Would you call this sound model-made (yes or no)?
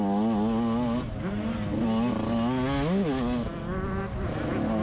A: no